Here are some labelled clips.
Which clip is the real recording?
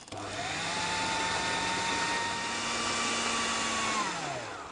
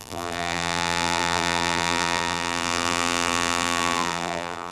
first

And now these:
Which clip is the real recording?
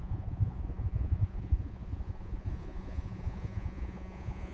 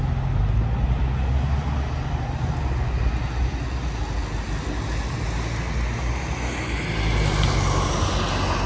second